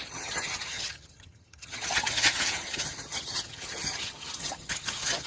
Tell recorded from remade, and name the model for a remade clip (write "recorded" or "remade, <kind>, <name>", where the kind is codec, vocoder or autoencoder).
remade, vocoder, HiFi-GAN